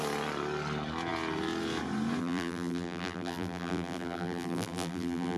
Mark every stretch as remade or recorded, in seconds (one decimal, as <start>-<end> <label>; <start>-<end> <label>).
0.0-2.2 recorded; 2.2-5.4 remade

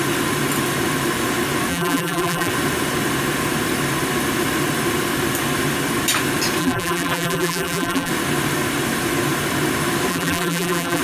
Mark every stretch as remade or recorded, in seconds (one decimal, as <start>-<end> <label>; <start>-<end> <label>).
0.0-1.7 recorded; 1.7-2.5 remade; 2.5-6.6 recorded; 6.6-8.1 remade; 8.1-10.1 recorded; 10.1-11.0 remade

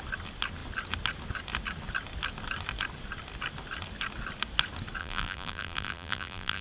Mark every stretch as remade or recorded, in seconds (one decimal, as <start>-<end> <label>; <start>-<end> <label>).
0.0-5.0 recorded; 5.0-6.6 remade

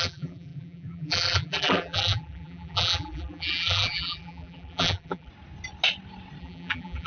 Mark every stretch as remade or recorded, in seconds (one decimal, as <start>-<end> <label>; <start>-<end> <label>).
0.0-5.3 remade; 5.3-6.4 recorded; 6.4-7.1 remade

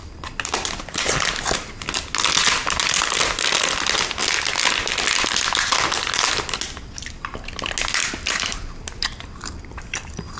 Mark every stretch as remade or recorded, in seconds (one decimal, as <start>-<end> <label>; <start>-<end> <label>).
0.0-1.8 remade; 1.8-8.0 recorded; 8.0-10.4 remade

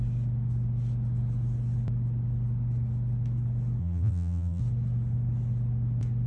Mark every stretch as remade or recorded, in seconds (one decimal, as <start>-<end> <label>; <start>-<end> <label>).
0.0-3.8 recorded; 3.8-4.6 remade; 4.6-6.3 recorded

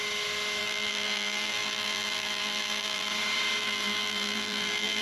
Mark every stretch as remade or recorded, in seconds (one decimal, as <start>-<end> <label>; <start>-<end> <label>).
0.0-0.6 recorded; 0.6-3.1 remade; 3.1-3.6 recorded; 3.6-5.0 remade

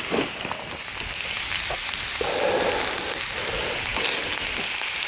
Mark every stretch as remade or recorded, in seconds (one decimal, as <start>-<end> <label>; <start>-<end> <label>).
0.0-5.1 recorded